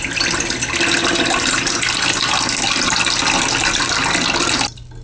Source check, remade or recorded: recorded